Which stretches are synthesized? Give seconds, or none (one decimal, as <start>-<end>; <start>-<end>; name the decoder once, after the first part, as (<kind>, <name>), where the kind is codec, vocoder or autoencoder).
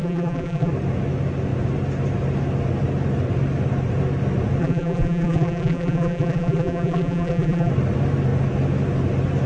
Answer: 0.0-0.7 (vocoder, BigVGAN v2); 4.6-7.7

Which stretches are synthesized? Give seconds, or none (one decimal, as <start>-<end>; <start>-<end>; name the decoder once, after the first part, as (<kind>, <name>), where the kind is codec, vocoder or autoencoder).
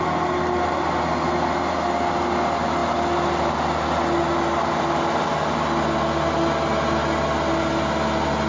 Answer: none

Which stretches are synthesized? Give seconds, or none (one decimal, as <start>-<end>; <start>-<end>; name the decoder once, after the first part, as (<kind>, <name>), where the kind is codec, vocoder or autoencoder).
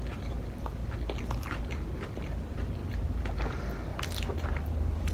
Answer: 2.8-3.3 (vocoder, BigVGAN v2); 3.9-5.1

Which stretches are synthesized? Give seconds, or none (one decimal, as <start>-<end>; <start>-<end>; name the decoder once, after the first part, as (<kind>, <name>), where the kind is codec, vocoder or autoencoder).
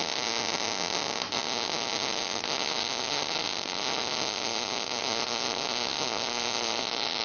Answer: 0.0-4.5 (vocoder, BigVGAN v2); 5.0-7.2